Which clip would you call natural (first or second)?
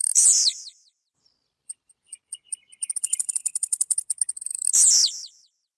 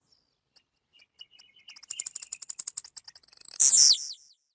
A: second